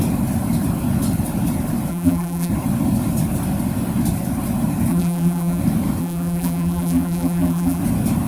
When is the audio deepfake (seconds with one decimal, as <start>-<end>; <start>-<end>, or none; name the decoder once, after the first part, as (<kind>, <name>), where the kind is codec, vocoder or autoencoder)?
1.9-2.5 (vocoder, BigVGAN v2); 4.9-5.6; 6.0-7.8